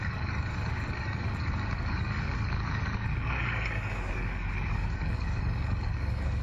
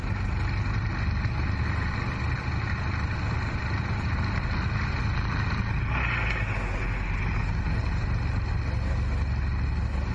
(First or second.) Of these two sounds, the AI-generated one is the first